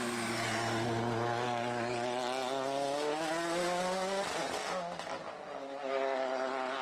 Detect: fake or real real